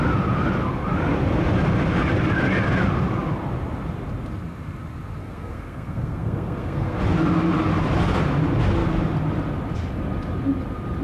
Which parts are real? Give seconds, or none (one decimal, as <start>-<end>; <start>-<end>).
0.0-5.2; 7.0-11.0